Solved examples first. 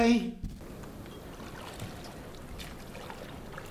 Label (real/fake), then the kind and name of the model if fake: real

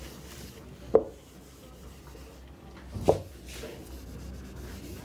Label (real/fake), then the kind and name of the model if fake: real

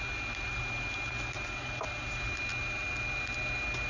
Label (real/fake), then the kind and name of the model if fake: real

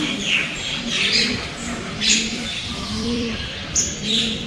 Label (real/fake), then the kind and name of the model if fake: fake, vocoder, BigVGAN v2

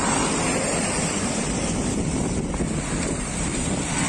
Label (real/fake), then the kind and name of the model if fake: fake, vocoder, BigVGAN v2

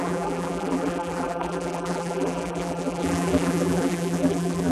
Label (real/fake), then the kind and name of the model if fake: fake, vocoder, BigVGAN v2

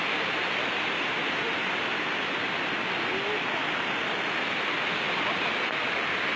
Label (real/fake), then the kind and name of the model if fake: real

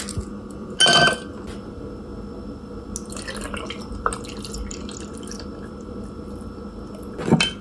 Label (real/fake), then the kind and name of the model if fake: real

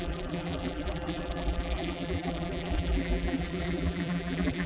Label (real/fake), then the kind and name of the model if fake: fake, vocoder, BigVGAN v2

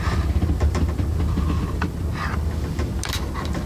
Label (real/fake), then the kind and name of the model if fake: fake, vocoder, BigVGAN v2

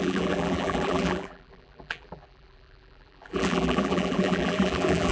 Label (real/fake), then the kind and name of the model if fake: fake, vocoder, BigVGAN v2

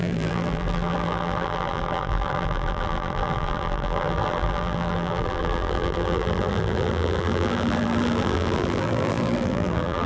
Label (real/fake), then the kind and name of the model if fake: fake, vocoder, BigVGAN v2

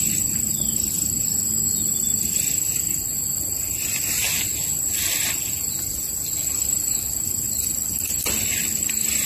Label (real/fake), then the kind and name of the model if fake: real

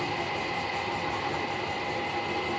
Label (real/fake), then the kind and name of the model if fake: real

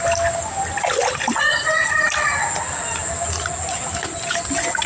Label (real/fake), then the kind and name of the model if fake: real